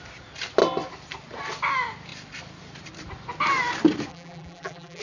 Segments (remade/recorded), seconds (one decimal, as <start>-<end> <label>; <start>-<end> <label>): 0.0-4.1 recorded; 4.1-5.0 remade